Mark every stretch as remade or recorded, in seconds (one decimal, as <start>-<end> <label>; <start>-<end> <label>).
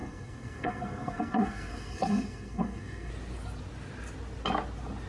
0.0-3.1 remade; 3.1-5.1 recorded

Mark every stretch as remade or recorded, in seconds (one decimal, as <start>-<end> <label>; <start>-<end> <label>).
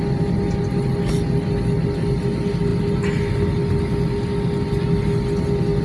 0.0-5.8 recorded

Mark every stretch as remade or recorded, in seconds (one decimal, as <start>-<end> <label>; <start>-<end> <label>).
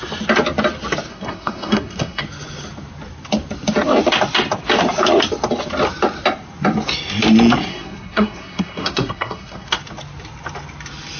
0.0-1.1 recorded; 1.1-2.2 remade; 2.2-7.7 recorded; 7.7-9.7 remade; 9.7-11.2 recorded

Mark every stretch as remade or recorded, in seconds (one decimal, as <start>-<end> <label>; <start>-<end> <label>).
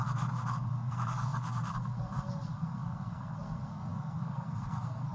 0.0-5.1 remade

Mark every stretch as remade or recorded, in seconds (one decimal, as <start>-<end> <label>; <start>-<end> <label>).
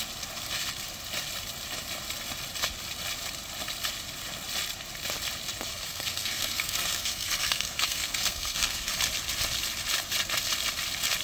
0.0-5.7 recorded; 5.7-8.9 remade; 8.9-11.2 recorded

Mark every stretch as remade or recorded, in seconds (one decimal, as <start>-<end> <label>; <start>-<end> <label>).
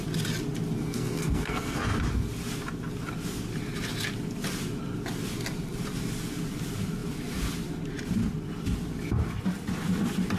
0.0-0.8 recorded; 0.8-2.0 remade; 2.0-10.4 recorded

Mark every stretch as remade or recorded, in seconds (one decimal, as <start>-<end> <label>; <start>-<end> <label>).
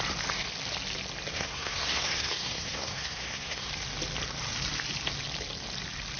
0.0-1.3 recorded; 1.3-3.7 remade; 3.7-6.2 recorded